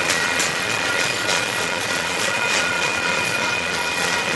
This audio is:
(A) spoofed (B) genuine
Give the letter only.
A